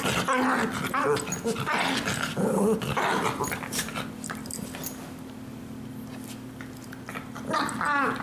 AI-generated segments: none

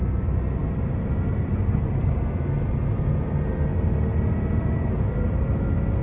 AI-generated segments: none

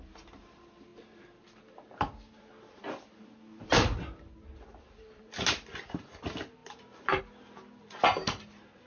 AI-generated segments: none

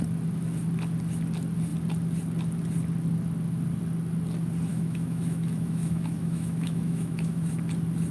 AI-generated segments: 4.7-7.5 (autoencoder, DAC-VAE)

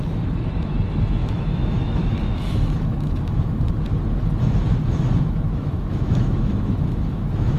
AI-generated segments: 1.2-3.7 (autoencoder, DAC-VAE); 4.9-7.6

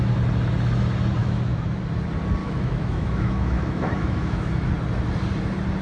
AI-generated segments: 1.2-1.8 (autoencoder, DAC-VAE); 2.4-4.7